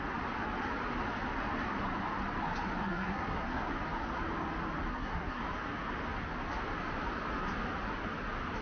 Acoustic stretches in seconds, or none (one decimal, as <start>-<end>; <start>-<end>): 0.0-2.8; 3.7-4.9; 5.4-8.6